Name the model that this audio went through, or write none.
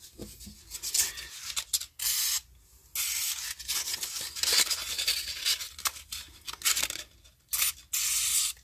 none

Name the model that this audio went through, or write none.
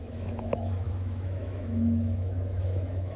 autoencoder, DAC-VAE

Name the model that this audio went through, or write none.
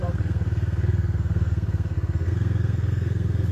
codec, SNAC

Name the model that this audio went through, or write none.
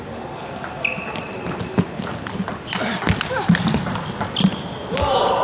none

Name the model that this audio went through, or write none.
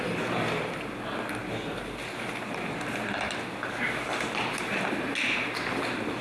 none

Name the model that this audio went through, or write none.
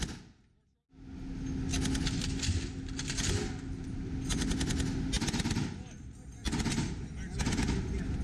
none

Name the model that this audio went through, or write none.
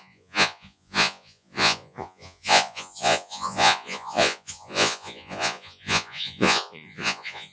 vocoder, Vocos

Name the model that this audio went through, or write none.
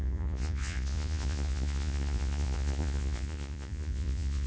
vocoder, Vocos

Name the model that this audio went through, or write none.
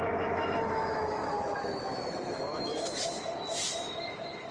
autoencoder, DAC-VAE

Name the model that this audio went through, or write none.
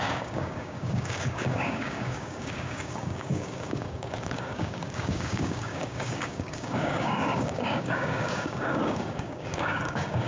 codec, DAC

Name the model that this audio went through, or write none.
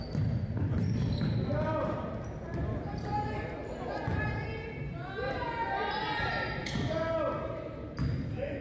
none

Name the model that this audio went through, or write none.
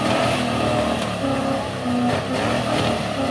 none